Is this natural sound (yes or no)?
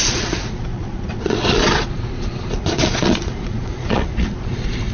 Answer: no